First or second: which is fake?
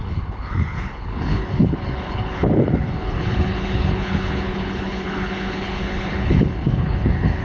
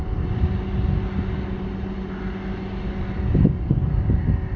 first